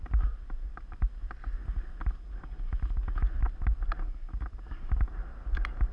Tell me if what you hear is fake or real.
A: real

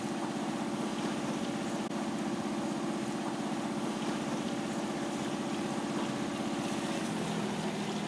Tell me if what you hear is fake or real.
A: real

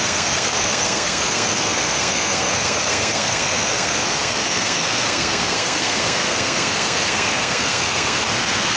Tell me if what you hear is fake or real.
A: fake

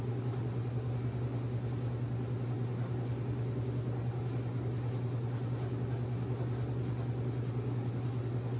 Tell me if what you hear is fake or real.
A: real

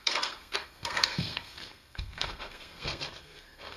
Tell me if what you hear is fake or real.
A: fake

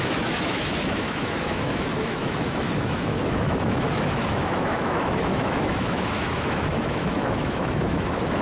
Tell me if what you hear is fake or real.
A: fake